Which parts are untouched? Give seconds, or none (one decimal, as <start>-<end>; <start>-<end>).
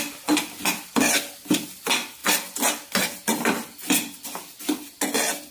0.0-5.5